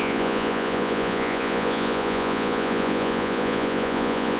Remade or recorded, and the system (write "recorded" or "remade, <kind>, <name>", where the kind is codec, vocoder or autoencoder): remade, vocoder, Vocos